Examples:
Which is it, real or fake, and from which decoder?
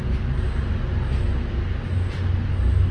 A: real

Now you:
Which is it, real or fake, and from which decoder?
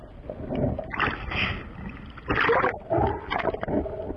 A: real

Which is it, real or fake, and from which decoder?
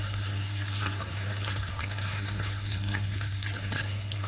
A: fake, codec, SNAC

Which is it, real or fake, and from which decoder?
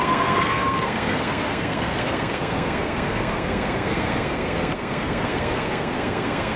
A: fake, codec, SNAC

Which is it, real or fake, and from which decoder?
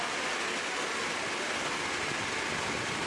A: real